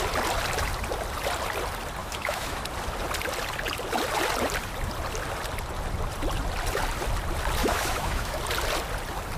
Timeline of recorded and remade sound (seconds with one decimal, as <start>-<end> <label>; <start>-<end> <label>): 0.0-2.0 recorded; 2.0-2.6 remade; 2.6-7.6 recorded; 7.6-8.4 remade; 8.4-9.4 recorded